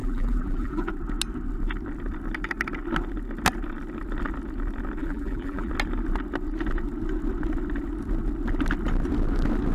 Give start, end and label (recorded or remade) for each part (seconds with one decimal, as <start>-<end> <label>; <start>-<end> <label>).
0.0-0.9 remade; 0.9-5.0 recorded; 5.0-5.7 remade; 5.7-9.7 recorded